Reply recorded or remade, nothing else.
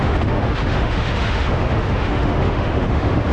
remade